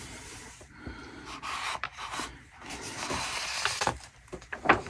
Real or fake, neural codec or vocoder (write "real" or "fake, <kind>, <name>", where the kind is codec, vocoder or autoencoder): fake, vocoder, BigVGAN v2